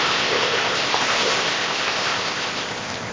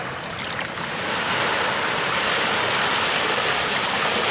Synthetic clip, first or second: first